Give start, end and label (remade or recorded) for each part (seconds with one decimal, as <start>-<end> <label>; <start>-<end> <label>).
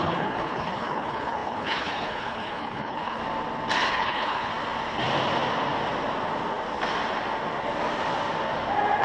0.0-3.2 remade; 3.2-3.9 recorded; 3.9-4.5 remade; 4.5-9.0 recorded